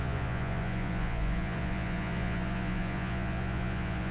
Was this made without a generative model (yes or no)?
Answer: no